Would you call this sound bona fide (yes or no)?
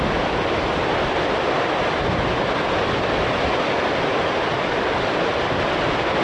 yes